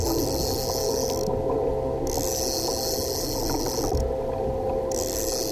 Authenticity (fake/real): real